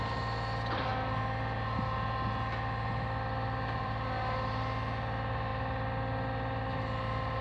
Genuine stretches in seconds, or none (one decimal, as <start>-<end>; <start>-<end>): 0.9-2.9